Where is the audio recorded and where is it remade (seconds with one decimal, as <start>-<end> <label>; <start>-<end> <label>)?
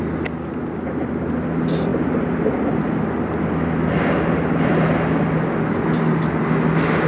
0.0-7.1 recorded